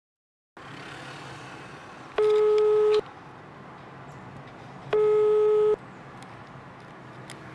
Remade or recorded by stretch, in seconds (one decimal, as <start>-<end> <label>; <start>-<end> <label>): 0.0-7.5 recorded